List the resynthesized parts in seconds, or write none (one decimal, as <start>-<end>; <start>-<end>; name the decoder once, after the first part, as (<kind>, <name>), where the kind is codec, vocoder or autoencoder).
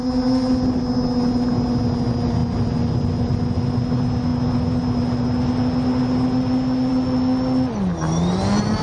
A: none